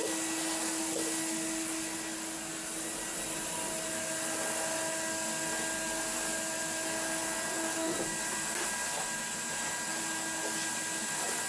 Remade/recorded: recorded